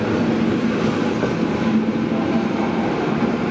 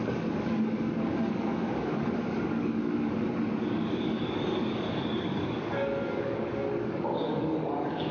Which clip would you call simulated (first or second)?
second